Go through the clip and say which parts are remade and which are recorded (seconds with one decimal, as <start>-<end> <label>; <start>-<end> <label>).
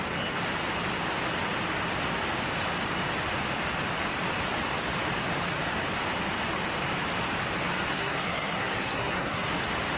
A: 0.0-7.9 recorded; 7.9-9.5 remade; 9.5-10.0 recorded